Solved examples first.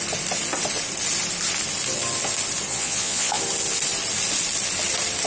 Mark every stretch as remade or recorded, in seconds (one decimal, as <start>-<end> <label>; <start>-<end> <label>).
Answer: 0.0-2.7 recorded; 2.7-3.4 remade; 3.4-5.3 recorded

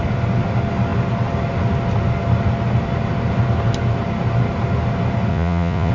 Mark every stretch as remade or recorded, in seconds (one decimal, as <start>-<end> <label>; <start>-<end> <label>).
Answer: 0.0-5.3 recorded; 5.3-5.9 remade

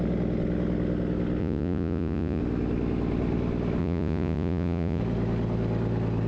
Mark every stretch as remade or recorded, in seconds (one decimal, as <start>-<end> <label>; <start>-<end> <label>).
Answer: 0.0-1.4 recorded; 1.4-2.4 remade; 2.4-3.8 recorded; 3.8-5.0 remade; 5.0-6.3 recorded

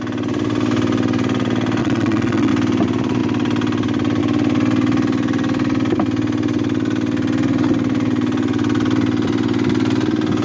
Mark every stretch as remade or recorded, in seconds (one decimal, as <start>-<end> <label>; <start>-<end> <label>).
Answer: 0.0-1.8 recorded; 1.8-2.5 remade; 2.5-10.4 recorded

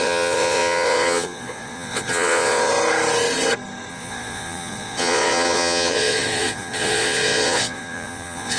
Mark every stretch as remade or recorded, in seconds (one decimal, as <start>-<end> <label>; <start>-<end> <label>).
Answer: 0.0-2.7 remade; 2.7-3.9 recorded; 3.9-8.6 remade

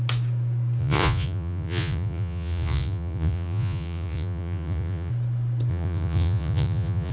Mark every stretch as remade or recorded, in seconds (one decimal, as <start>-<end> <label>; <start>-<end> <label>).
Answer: 0.0-0.8 recorded; 0.8-5.1 remade; 5.1-5.7 recorded; 5.7-7.1 remade

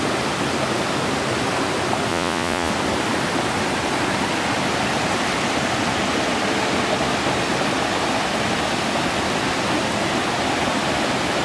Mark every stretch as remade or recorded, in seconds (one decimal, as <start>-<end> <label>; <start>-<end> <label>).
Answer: 0.0-2.1 recorded; 2.1-2.7 remade; 2.7-11.4 recorded

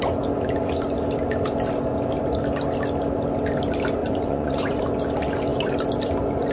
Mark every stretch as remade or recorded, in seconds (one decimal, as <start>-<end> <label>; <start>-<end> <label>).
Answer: 0.0-4.0 recorded; 4.0-4.8 remade; 4.8-6.5 recorded